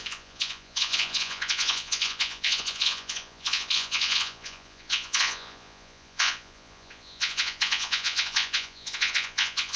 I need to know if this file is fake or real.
fake